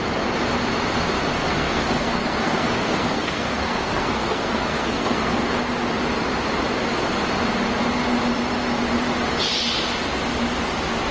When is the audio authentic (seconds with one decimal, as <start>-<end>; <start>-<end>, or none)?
0.0-1.5; 5.5-11.1